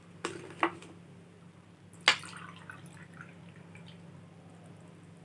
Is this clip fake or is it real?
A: real